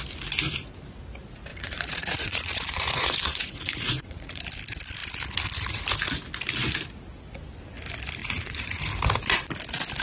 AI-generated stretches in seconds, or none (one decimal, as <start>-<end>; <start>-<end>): 1.5-4.4; 8.2-8.9